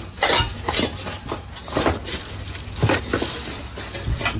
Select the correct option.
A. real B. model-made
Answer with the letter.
A